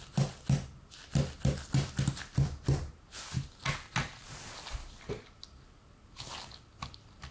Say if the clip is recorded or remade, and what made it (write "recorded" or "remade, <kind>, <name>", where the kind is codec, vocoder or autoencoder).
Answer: recorded